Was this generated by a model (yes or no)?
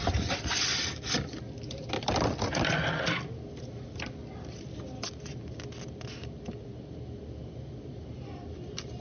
no